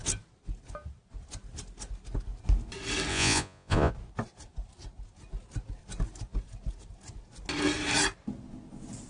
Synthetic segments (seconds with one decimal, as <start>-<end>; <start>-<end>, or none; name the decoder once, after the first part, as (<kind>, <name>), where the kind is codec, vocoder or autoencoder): 3.1-3.9 (vocoder, Vocos)

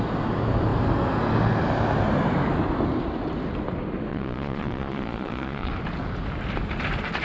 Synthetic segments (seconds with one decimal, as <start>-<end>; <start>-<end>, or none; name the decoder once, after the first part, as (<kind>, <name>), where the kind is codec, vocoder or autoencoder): 4.1-5.7 (vocoder, Vocos)

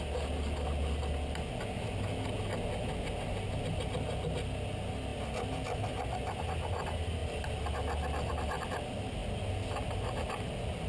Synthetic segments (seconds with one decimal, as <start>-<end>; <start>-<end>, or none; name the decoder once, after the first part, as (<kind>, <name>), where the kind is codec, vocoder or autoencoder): none